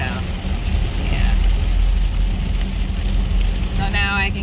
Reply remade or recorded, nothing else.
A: recorded